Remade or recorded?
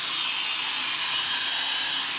recorded